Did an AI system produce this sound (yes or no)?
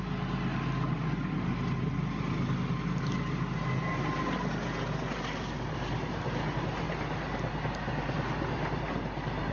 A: no